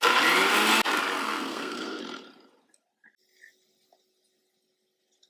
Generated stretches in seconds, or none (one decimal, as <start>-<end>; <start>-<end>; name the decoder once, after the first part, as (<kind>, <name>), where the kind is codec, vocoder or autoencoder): 1.2-2.0 (codec, SNAC)